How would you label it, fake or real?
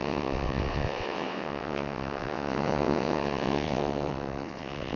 fake